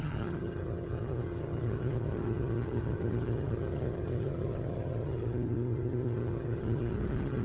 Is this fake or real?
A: fake